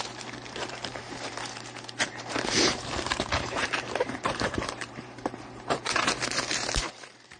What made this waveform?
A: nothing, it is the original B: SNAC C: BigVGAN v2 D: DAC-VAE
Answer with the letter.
C